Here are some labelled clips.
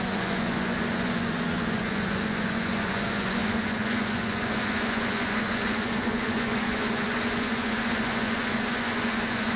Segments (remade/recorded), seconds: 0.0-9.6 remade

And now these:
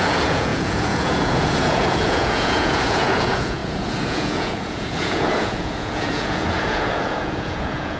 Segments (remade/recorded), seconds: 0.0-8.0 remade

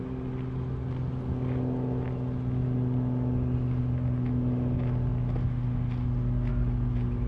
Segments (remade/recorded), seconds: 0.0-7.3 recorded

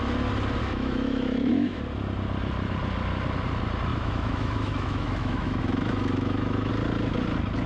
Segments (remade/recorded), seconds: 0.0-0.6 recorded; 0.6-1.8 remade; 1.8-3.9 recorded; 3.9-6.7 remade; 6.7-7.7 recorded

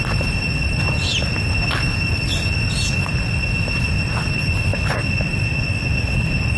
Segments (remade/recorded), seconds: 0.0-6.6 recorded

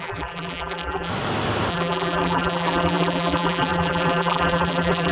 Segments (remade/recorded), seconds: 0.0-1.1 remade; 1.1-1.7 recorded; 1.7-5.1 remade

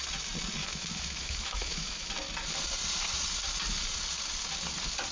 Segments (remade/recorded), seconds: 0.0-0.6 recorded; 0.6-2.1 remade; 2.1-5.1 recorded

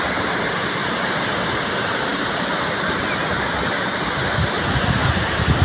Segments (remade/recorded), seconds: 0.0-5.6 recorded